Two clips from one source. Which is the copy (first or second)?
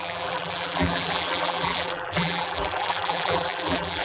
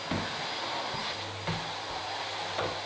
first